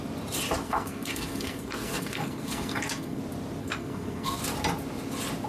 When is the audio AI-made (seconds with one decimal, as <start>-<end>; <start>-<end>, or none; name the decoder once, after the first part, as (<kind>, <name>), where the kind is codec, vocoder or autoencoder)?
0.6-3.2 (codec, SNAC); 3.6-4.4